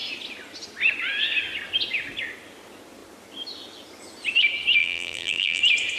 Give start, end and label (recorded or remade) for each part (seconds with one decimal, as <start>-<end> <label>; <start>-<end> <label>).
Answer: 0.0-4.8 recorded; 4.8-5.6 remade; 5.6-6.0 recorded